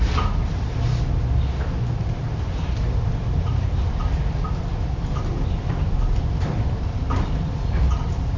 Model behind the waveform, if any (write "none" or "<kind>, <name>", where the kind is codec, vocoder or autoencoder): none